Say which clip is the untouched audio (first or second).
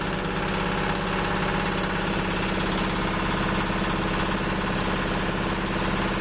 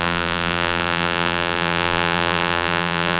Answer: first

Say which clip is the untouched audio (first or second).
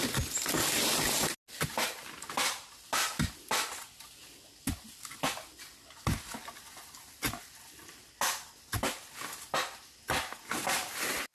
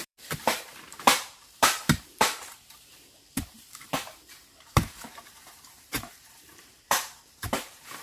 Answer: first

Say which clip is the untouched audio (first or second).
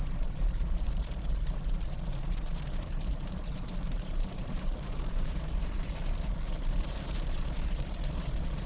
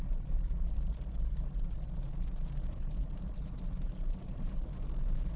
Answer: second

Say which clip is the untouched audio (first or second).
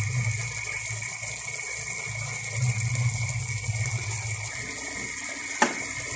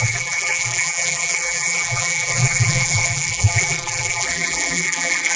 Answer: first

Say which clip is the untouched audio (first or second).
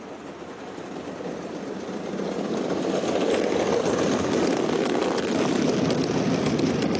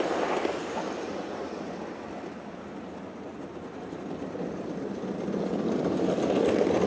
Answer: second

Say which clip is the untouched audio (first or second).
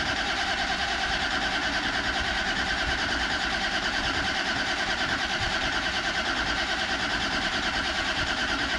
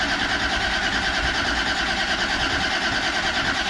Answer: second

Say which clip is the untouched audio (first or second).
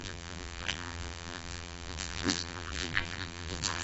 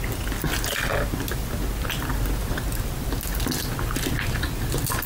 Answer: second